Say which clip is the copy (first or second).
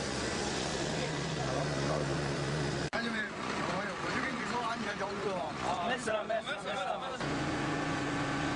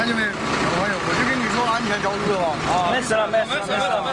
first